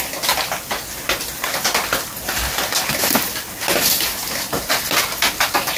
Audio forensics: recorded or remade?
recorded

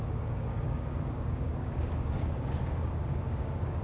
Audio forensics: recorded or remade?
remade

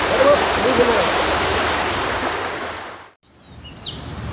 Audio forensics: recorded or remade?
recorded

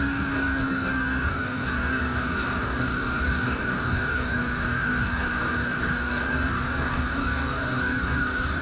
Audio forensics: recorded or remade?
remade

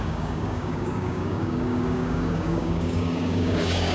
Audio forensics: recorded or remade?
remade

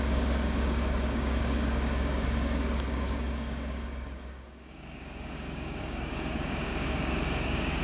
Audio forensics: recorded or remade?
remade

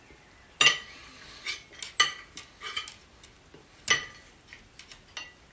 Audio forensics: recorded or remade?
recorded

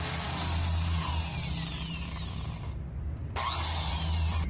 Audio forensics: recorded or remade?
recorded